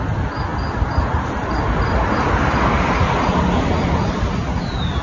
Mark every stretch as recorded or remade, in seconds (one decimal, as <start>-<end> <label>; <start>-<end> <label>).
0.0-5.0 recorded